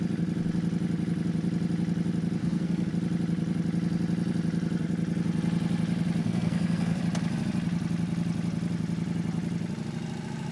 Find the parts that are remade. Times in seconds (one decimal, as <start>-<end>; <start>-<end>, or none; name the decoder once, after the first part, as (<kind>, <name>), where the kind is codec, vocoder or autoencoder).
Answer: 2.4-2.9 (codec, SNAC); 6.2-7.0